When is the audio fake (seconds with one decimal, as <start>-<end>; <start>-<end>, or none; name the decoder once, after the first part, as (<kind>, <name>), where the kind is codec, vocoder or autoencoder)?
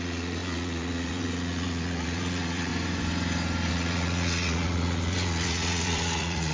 0.0-2.7 (vocoder, Vocos); 3.7-6.5